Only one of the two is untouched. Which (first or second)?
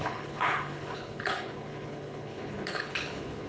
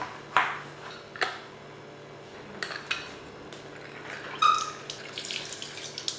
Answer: second